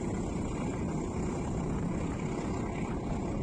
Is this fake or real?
real